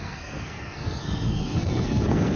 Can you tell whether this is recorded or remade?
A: remade